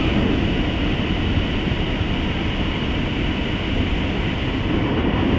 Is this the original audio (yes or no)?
yes